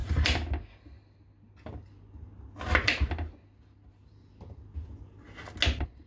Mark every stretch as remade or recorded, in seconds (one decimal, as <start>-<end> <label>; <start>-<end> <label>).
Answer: 0.0-6.1 recorded